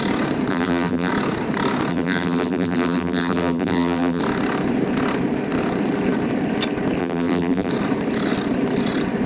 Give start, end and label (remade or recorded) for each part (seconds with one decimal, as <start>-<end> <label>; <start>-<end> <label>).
0.0-0.5 recorded; 0.5-1.1 remade; 1.1-1.9 recorded; 1.9-4.2 remade; 4.2-7.0 recorded; 7.0-7.7 remade; 7.7-9.3 recorded

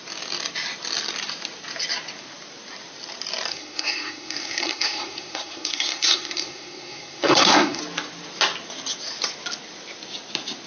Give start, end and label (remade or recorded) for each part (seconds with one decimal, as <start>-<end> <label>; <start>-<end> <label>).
0.0-3.5 recorded; 3.5-7.8 remade; 7.8-10.7 recorded

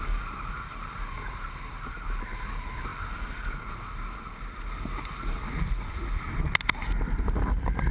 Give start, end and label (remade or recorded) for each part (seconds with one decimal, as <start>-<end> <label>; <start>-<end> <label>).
0.0-7.9 recorded

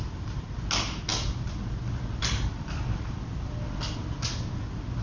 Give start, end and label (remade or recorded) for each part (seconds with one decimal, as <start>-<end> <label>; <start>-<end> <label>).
0.0-5.0 recorded

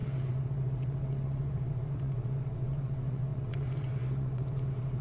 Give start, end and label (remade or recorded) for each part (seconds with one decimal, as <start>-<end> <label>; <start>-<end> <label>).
0.0-5.0 remade

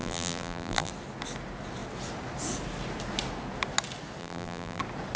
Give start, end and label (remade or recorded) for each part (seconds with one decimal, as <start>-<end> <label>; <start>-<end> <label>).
0.0-0.9 remade; 0.9-4.2 recorded; 4.2-4.8 remade; 4.8-5.2 recorded

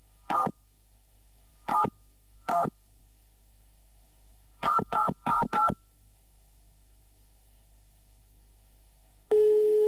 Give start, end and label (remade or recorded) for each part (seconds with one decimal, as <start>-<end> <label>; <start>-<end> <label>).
0.0-9.9 remade

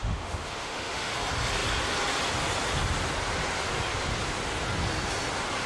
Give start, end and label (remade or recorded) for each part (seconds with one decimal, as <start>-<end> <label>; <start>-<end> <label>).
0.0-1.1 remade; 1.1-5.7 recorded